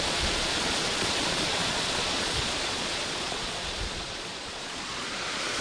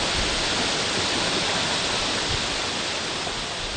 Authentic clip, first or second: second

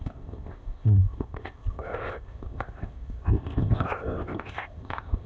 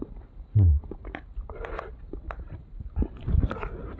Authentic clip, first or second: second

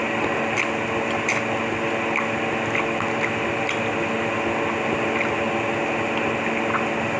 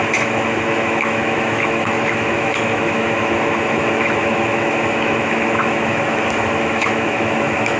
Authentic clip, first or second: first